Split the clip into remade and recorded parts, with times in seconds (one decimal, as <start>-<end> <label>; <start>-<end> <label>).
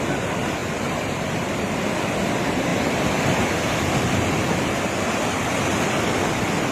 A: 0.0-0.6 recorded; 0.6-1.5 remade; 1.5-6.7 recorded